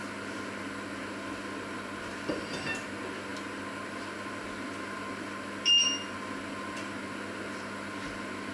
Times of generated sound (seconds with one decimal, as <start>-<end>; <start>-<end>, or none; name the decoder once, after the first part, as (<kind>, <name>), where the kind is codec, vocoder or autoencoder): none